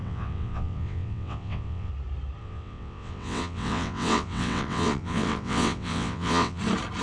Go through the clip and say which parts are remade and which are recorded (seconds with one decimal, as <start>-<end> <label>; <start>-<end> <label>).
0.0-1.9 remade; 1.9-2.4 recorded; 2.4-6.6 remade; 6.6-7.0 recorded